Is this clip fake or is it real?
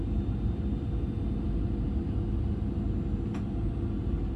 real